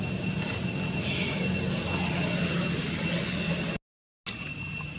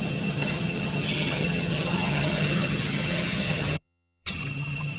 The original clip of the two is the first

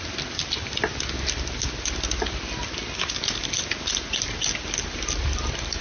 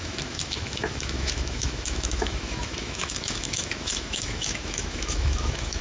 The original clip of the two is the first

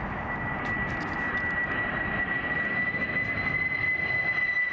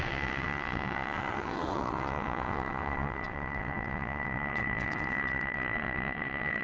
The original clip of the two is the first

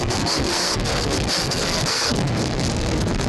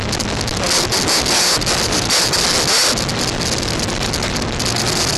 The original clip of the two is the second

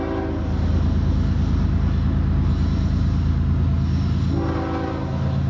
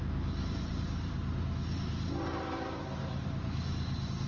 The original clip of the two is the first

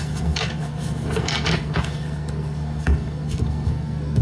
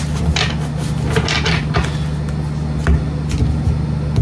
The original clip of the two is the second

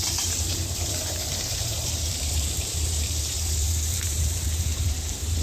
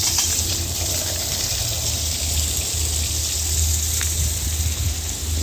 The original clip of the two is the second